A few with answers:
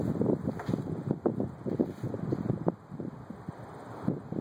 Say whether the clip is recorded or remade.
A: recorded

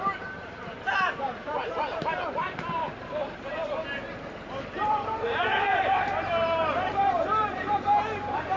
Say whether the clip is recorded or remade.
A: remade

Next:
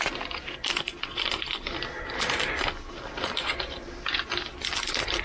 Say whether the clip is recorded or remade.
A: recorded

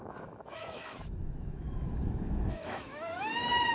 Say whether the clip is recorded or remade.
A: remade